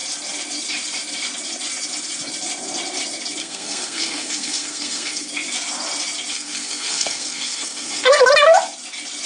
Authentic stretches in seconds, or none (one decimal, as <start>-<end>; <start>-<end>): 0.0-3.4; 5.3-6.3; 8.2-9.3